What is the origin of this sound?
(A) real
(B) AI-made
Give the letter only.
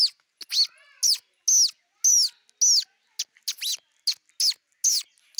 A